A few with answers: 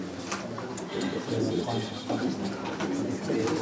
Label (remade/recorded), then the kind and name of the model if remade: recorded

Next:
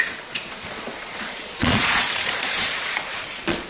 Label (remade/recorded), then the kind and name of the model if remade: remade, vocoder, Vocos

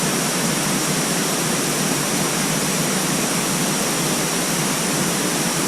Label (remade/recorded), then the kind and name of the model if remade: recorded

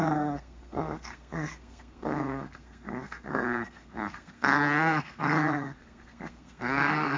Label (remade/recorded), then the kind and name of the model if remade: remade, codec, SNAC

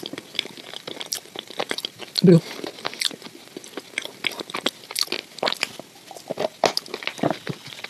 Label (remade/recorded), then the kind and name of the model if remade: recorded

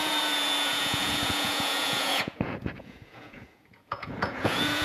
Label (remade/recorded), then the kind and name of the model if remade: remade, vocoder, Vocos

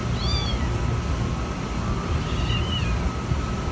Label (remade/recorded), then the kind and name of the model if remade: recorded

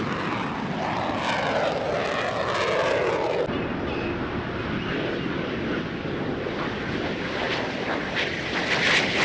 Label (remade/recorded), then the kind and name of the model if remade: recorded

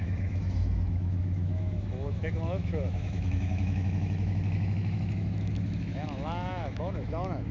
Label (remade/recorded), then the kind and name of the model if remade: remade, autoencoder, DAC-VAE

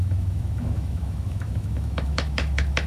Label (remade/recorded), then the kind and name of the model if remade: remade, autoencoder, DAC-VAE